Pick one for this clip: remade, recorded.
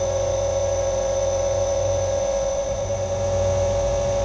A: remade